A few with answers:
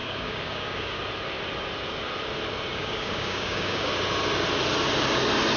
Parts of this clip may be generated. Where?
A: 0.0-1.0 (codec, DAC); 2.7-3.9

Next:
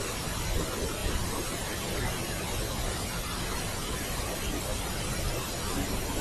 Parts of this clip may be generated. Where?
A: 1.0-1.9 (vocoder, BigVGAN v2)

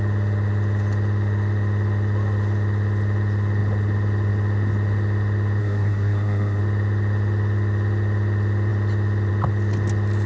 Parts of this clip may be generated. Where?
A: 5.6-6.6 (codec, SNAC)

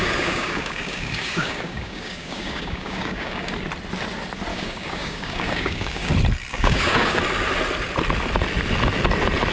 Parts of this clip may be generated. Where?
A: 0.0-3.5 (codec, DAC); 4.5-6.1; 6.5-7.2

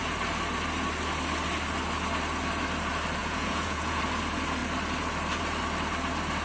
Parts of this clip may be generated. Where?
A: 3.2-4.0 (vocoder, Vocos)

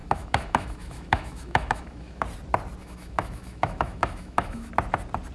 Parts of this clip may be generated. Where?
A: 0.0-2.2 (autoencoder, DAC-VAE); 2.8-4.7